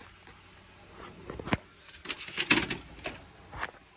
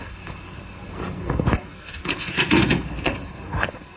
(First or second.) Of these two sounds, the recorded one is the first